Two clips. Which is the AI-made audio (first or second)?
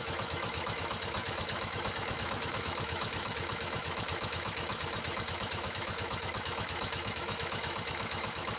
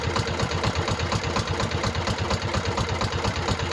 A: first